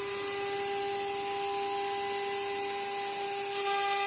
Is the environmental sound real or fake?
real